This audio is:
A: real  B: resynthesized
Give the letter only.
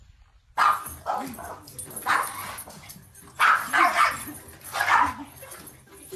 A